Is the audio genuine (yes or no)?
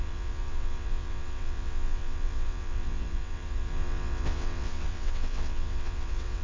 no